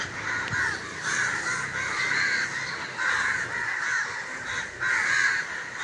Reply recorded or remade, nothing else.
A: recorded